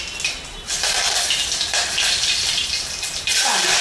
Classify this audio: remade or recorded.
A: recorded